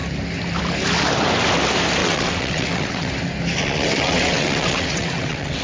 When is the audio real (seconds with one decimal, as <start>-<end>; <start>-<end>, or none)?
0.0-2.0; 3.1-3.6

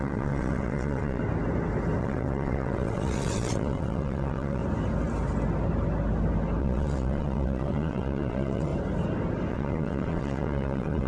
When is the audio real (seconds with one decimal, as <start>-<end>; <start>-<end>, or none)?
1.2-2.0; 4.6-6.6; 8.7-9.5

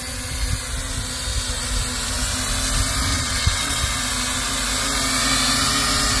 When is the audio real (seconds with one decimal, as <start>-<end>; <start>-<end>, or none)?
0.0-3.1; 3.8-6.2

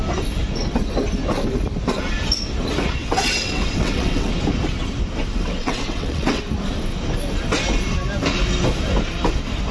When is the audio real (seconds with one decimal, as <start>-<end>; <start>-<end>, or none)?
0.0-3.0; 4.3-5.3; 6.4-9.7

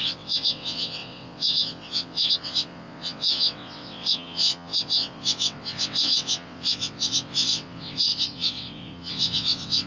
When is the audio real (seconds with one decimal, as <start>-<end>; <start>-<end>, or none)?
none

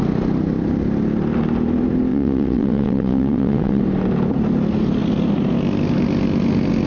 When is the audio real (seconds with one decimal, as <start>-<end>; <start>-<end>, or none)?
0.0-2.1; 3.8-6.9

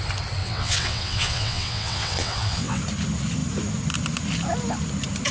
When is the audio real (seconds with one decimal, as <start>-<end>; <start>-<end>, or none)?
0.0-0.4; 2.8-5.3

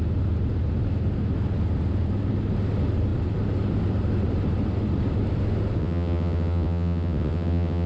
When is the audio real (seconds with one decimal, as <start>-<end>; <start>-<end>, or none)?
0.0-5.8